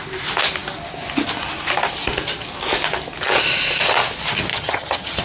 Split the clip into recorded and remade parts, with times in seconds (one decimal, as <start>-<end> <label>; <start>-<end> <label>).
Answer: 0.0-4.5 recorded; 4.5-5.2 remade